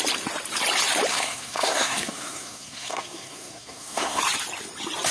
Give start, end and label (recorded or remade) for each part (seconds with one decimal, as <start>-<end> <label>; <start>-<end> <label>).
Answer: 0.0-1.1 recorded; 1.1-4.2 remade; 4.2-5.1 recorded